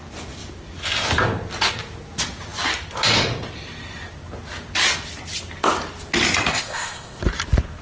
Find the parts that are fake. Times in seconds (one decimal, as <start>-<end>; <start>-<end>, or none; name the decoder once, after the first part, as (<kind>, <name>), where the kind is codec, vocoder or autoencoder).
6.5-7.2 (codec, ZipCodec)